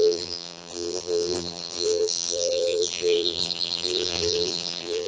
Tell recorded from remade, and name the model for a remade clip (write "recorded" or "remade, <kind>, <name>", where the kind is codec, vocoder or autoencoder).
remade, vocoder, BigVGAN v2